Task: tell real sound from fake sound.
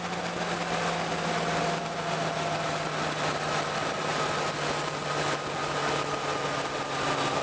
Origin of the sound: real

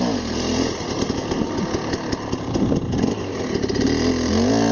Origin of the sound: real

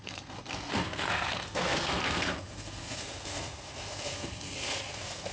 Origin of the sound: fake